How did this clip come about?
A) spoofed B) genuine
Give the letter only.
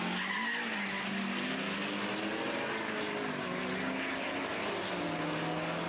B